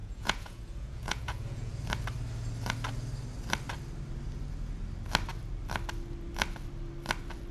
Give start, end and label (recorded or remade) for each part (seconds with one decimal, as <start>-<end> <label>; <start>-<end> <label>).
0.0-1.7 remade; 1.7-7.5 recorded